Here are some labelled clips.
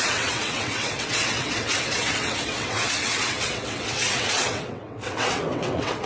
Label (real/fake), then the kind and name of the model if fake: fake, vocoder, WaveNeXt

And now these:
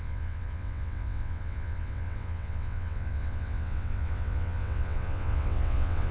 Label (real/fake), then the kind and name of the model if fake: fake, vocoder, WaveNeXt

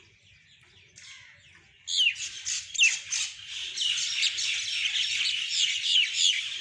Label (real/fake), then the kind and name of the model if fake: real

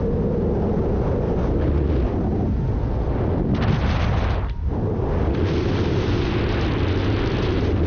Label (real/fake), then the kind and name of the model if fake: real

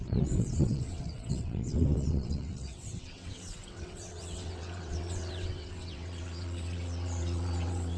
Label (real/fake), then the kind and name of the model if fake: fake, vocoder, WaveNeXt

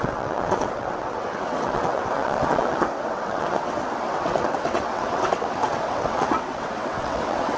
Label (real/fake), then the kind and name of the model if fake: fake, vocoder, WaveNeXt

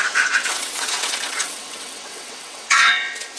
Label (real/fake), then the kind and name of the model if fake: fake, vocoder, WaveNeXt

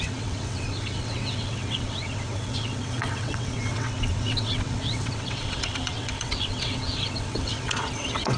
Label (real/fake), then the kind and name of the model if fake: fake, vocoder, WaveNeXt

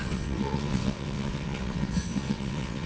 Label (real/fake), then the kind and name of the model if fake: fake, vocoder, WaveNeXt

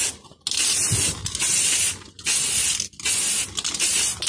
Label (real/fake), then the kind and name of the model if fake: real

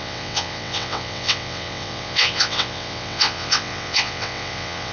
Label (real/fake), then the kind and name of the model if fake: fake, vocoder, WaveNeXt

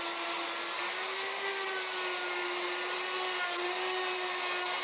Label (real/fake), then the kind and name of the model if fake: real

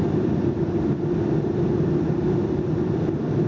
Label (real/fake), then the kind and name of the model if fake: real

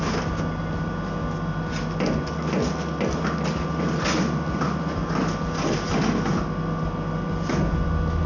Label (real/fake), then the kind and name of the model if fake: real